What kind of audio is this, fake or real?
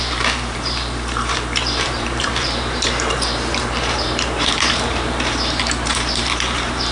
fake